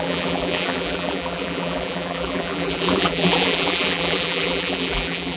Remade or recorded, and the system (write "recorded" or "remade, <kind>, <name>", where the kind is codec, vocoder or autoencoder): remade, vocoder, BigVGAN v2